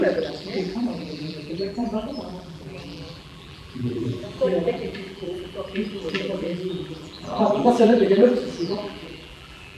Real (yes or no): no